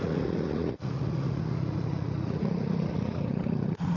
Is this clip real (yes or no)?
no